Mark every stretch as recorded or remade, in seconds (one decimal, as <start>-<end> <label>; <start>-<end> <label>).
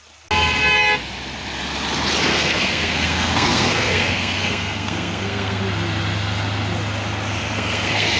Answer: 0.0-2.3 recorded; 2.3-5.6 remade; 5.6-7.4 recorded; 7.4-8.2 remade